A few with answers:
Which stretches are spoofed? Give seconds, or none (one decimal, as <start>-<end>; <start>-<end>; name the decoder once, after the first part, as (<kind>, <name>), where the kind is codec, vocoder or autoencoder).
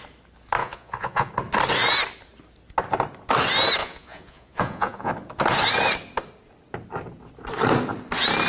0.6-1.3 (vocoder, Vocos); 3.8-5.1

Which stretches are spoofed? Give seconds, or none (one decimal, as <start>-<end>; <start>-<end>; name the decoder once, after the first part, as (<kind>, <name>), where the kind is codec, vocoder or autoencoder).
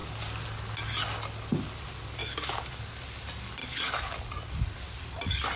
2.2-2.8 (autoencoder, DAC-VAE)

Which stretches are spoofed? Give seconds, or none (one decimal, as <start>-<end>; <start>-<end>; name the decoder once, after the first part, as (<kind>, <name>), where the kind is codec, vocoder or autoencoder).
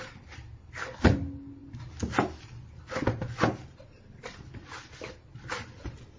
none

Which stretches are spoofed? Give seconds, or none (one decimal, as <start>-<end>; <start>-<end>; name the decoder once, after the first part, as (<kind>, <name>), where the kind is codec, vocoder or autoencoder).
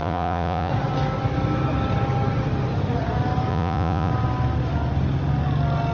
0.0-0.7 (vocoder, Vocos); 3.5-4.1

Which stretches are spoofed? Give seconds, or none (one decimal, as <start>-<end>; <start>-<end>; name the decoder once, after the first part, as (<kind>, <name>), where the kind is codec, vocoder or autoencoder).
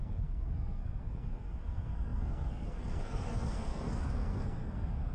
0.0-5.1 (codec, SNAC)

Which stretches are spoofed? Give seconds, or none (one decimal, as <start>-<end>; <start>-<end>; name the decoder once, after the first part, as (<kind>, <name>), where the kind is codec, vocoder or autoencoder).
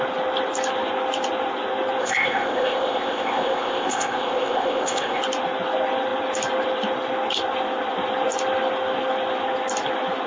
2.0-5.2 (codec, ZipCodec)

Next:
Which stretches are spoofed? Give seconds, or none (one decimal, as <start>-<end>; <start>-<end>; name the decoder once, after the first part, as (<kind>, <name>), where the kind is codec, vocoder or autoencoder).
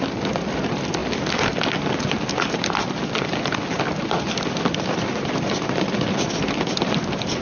none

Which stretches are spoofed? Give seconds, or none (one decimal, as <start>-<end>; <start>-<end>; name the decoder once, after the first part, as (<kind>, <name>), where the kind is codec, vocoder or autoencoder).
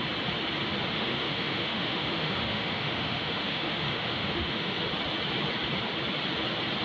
0.9-4.8 (autoencoder, DAC-VAE)